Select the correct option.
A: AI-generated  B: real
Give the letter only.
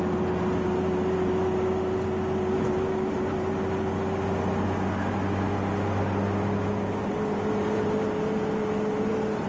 B